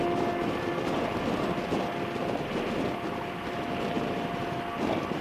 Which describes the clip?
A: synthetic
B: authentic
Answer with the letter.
B